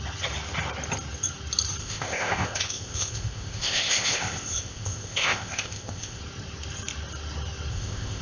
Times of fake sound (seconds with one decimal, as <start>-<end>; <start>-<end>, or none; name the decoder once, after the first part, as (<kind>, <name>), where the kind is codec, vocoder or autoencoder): 1.8-6.2 (codec, ZipCodec); 7.7-8.2